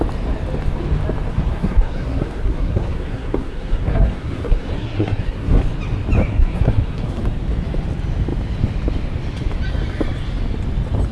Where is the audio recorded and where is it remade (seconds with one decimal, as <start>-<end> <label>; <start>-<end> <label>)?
0.0-1.3 recorded; 1.3-5.6 remade; 5.6-6.3 recorded; 6.3-7.2 remade; 7.2-11.1 recorded